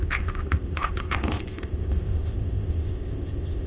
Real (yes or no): no